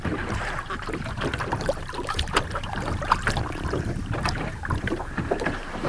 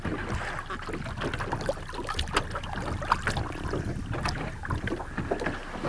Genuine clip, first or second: second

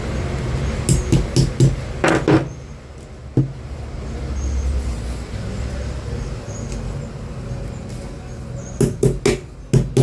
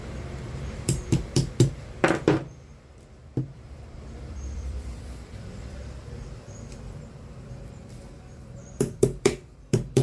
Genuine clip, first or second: first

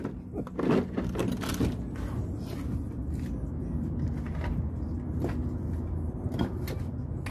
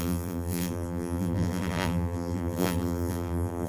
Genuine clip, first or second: first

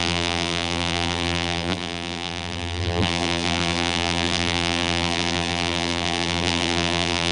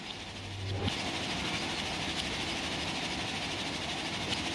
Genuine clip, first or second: second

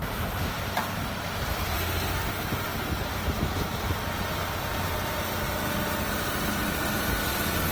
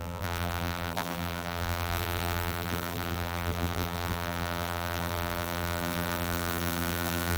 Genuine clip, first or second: first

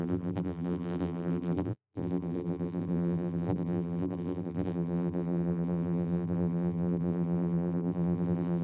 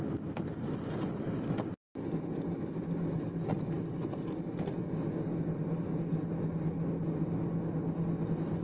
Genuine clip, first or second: second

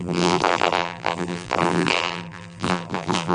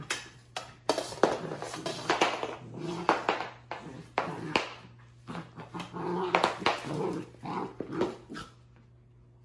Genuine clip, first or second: second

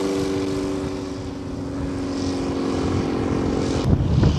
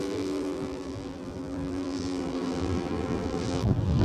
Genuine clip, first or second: first